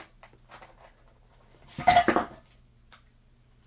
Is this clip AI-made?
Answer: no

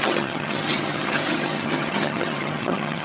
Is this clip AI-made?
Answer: yes